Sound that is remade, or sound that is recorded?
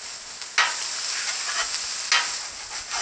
recorded